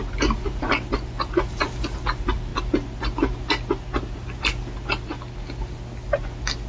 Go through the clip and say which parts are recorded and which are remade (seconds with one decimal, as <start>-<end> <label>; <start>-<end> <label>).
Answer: 0.0-2.5 remade; 2.5-6.7 recorded